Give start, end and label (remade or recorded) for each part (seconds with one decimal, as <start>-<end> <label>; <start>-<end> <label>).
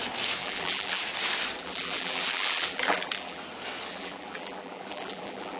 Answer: 0.0-0.4 recorded; 0.4-1.0 remade; 1.0-1.6 recorded; 1.6-3.4 remade; 3.4-3.9 recorded; 3.9-5.6 remade